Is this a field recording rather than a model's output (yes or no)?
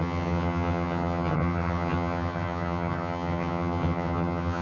no